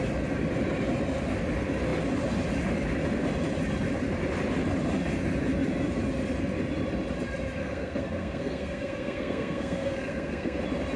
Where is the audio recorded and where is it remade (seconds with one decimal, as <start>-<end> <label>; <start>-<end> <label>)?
0.0-7.6 recorded; 7.6-10.6 remade; 10.6-11.0 recorded